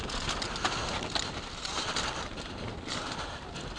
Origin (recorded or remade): recorded